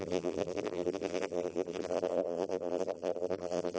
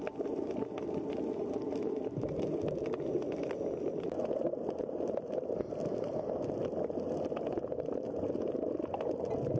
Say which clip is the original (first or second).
second